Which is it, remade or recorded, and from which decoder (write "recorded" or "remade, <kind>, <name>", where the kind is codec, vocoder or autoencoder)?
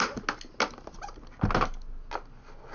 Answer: recorded